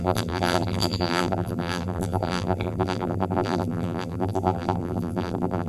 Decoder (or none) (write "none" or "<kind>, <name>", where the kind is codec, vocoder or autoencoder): vocoder, BigVGAN v2